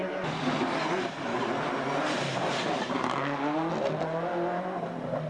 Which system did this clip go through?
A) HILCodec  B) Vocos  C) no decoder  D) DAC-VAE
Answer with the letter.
C